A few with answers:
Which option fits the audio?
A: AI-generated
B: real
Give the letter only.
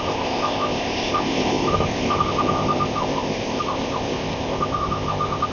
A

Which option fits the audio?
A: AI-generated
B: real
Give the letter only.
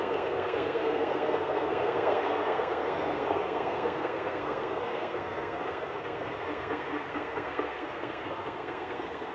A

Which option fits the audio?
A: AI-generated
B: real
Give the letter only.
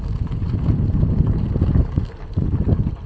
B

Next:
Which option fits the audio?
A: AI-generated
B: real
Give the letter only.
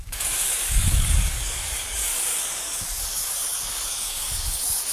A